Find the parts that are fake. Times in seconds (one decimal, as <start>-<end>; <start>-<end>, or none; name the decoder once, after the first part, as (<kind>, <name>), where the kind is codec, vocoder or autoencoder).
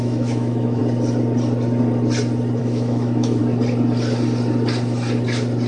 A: 0.0-0.8 (autoencoder, DAC-VAE); 2.6-3.4